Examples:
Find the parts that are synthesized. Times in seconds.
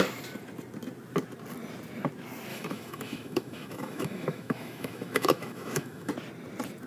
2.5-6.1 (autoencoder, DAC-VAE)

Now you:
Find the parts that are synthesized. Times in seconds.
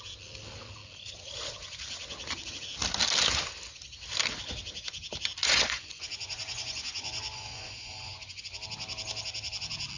5.4-8.4 (vocoder, Vocos)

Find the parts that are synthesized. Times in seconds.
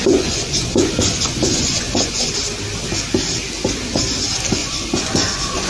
0.0-2.3 (vocoder, Vocos); 4.6-5.7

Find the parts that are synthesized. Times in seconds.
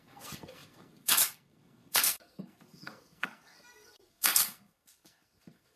0.0-5.8 (codec, SNAC)